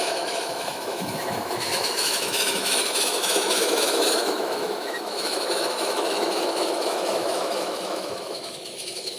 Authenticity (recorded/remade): remade